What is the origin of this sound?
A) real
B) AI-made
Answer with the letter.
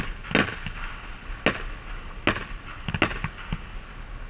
A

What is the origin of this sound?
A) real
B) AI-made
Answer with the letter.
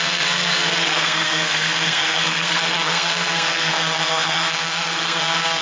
B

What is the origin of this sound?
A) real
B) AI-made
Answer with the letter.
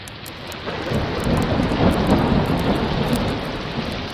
A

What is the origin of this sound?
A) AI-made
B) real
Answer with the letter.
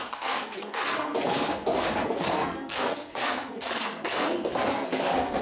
A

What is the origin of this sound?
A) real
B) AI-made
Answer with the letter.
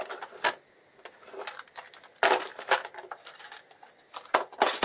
A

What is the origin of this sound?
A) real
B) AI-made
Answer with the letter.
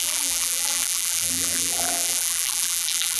B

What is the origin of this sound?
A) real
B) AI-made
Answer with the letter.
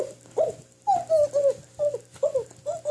A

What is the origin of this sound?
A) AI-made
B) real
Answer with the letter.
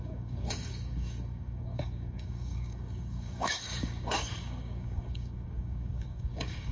A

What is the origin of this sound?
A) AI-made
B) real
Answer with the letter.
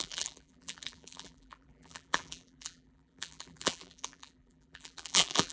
A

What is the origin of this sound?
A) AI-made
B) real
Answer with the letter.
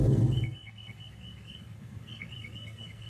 A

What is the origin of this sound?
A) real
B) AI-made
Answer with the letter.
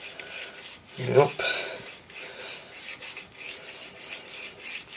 A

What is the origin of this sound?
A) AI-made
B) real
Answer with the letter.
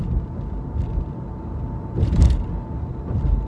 B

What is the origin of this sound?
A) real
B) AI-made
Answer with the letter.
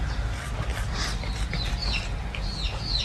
A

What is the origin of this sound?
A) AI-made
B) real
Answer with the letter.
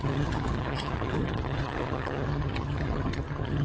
A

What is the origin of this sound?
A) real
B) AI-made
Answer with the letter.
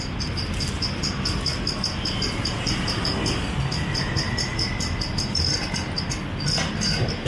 A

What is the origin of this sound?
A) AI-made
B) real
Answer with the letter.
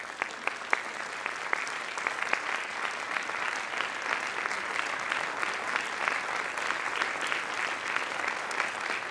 B